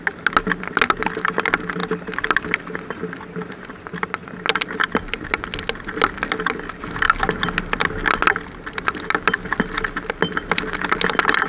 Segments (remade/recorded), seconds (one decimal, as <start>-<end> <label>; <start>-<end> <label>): 0.0-11.5 recorded